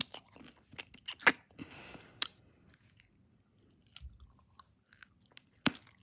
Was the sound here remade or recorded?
recorded